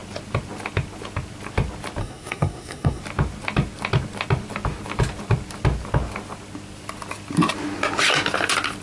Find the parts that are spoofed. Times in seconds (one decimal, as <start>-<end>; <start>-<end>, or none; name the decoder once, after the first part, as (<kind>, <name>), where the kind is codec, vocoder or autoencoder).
2.0-3.0 (codec, SNAC)